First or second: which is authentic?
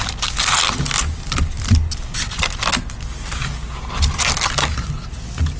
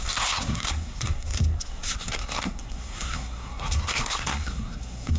first